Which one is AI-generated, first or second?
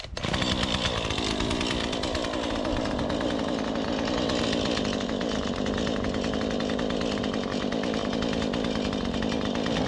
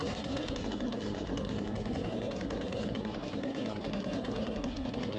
second